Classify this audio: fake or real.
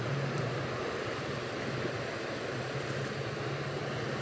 real